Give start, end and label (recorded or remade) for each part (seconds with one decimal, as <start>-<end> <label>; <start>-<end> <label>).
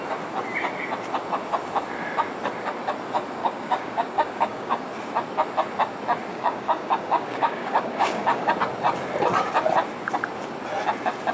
0.0-3.4 recorded; 3.4-4.9 remade; 4.9-6.3 recorded; 6.3-8.5 remade; 8.5-11.3 recorded